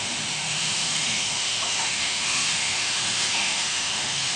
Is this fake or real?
fake